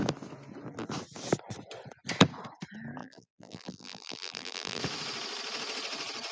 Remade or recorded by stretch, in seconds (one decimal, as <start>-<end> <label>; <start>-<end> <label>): 0.0-3.0 recorded; 3.0-4.8 remade; 4.8-6.3 recorded